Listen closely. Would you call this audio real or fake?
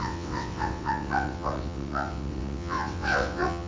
fake